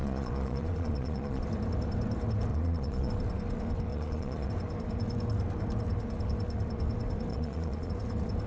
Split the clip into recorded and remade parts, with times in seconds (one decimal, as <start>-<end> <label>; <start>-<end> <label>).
0.0-1.4 remade; 1.4-2.5 recorded; 2.5-3.1 remade; 3.1-3.9 recorded; 3.9-4.5 remade; 4.5-7.3 recorded; 7.3-7.9 remade; 7.9-8.5 recorded